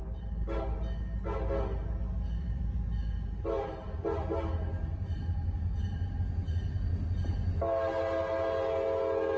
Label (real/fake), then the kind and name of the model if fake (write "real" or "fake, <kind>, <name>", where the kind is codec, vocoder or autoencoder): real